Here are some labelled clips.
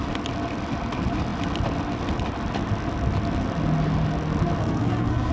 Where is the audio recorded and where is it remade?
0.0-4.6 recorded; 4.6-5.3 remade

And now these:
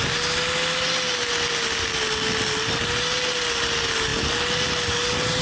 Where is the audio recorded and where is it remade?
0.0-5.4 recorded

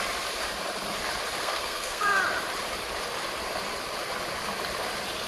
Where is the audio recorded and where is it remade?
0.0-1.4 recorded; 1.4-2.2 remade; 2.2-5.3 recorded

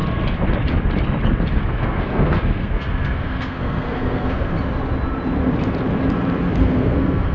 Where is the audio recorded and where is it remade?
0.0-1.6 recorded; 1.6-4.5 remade; 4.5-6.6 recorded; 6.6-7.3 remade

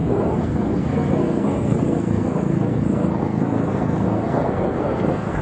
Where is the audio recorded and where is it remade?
0.0-5.4 remade

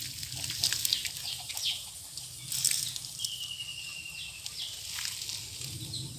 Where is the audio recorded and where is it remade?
0.0-6.2 recorded